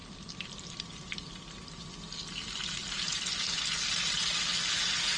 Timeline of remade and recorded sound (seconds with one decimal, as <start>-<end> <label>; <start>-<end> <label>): 0.0-5.2 recorded